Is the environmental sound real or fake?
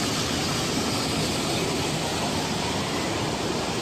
real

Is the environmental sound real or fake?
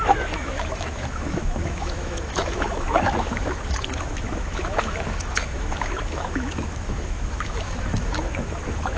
fake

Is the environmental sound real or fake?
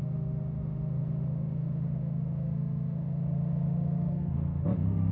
fake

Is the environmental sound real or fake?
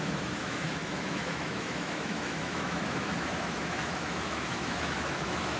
fake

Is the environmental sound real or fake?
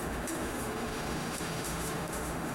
fake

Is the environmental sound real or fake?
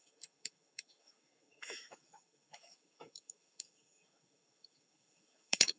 fake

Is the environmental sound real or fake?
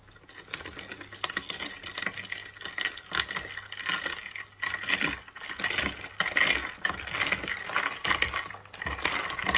real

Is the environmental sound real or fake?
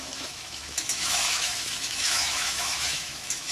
fake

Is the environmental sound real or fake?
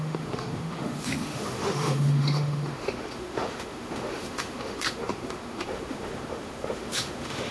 fake